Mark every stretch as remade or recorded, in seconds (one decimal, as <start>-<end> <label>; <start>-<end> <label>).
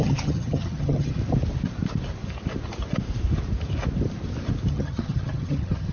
0.0-1.2 remade; 1.2-4.7 recorded; 4.7-5.9 remade